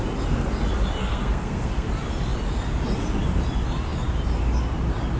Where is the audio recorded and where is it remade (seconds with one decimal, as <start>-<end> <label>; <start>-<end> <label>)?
0.0-1.0 recorded; 1.0-1.9 remade; 1.9-5.2 recorded